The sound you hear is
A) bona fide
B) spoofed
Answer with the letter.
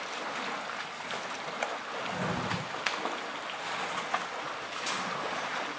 A